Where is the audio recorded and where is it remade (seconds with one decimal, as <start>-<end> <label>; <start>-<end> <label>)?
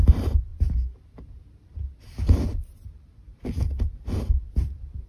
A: 0.0-0.5 remade; 0.5-3.6 recorded; 3.6-5.1 remade